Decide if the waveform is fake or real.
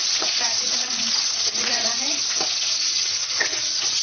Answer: fake